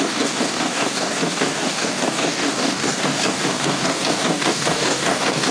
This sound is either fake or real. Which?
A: fake